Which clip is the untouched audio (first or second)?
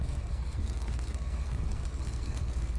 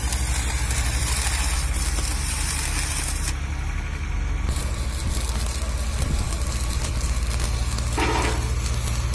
second